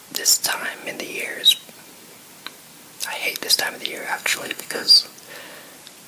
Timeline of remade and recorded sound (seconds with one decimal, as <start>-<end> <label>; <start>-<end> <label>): 0.0-4.1 recorded; 4.1-4.9 remade; 4.9-6.1 recorded